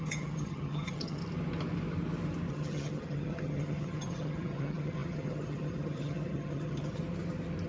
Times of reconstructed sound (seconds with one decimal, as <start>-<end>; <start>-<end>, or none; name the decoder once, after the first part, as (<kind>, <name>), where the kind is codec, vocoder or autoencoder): 0.0-1.2 (vocoder, HiFi-GAN); 2.5-7.0